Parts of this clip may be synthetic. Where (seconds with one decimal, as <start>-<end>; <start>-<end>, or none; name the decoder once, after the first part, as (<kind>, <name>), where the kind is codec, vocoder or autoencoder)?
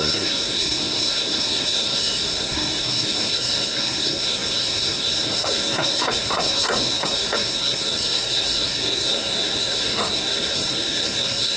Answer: 0.0-11.6 (codec, SNAC)